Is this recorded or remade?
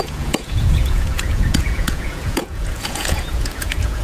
remade